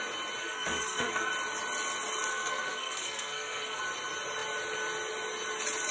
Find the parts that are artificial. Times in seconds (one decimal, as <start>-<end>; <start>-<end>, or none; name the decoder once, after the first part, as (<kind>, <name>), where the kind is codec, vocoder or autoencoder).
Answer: 0.4-1.3 (codec, SNAC); 2.3-3.8